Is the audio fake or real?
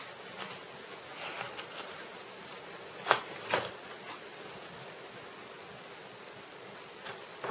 real